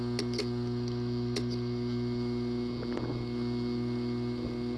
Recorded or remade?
recorded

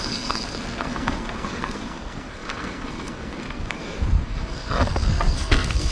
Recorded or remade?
remade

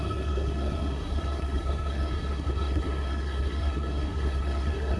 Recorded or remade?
remade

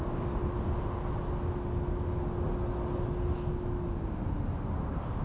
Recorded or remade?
recorded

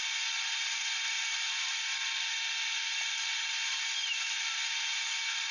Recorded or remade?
recorded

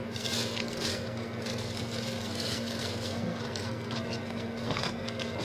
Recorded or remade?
remade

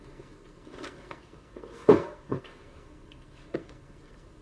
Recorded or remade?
remade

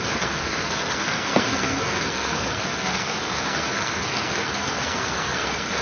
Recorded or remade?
remade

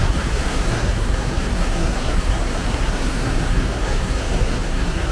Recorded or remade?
remade